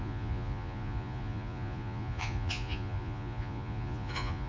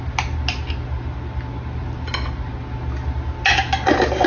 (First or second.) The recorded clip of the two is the second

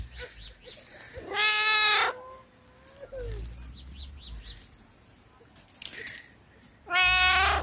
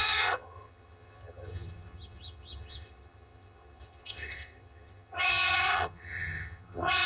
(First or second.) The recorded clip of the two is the first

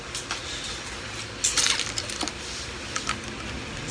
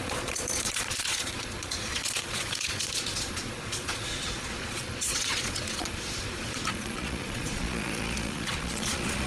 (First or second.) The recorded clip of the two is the first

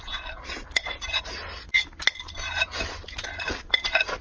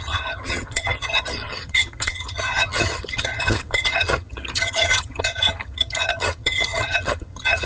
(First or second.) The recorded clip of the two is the first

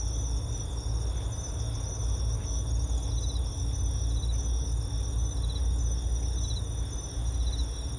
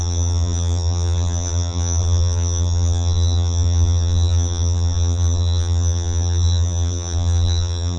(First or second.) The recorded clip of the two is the first